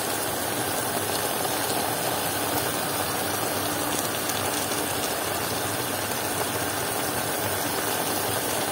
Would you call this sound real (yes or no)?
yes